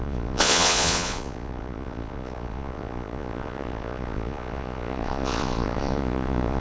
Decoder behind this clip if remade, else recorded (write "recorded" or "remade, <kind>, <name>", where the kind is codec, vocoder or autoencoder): remade, vocoder, Vocos